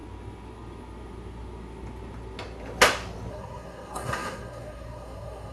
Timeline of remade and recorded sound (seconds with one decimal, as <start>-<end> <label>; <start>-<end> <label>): 0.0-3.3 recorded; 3.3-5.5 remade